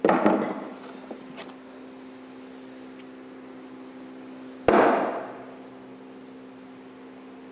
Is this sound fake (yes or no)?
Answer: no